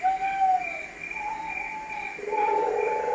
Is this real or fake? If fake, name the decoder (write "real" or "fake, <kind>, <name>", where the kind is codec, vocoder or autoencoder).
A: real